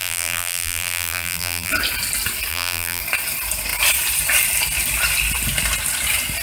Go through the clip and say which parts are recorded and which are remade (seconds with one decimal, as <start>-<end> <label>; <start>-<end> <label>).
0.0-1.7 remade; 1.7-2.5 recorded; 2.5-3.0 remade; 3.0-6.4 recorded